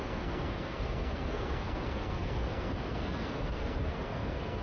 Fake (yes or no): yes